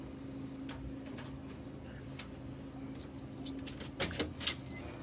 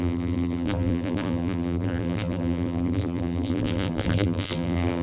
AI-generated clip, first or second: second